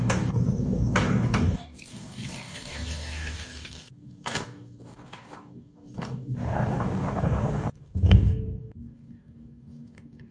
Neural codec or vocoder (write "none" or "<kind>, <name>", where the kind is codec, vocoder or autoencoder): codec, DAC